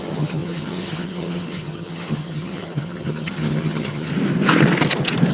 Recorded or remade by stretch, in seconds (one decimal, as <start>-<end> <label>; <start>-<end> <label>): 0.0-4.1 remade; 4.1-5.3 recorded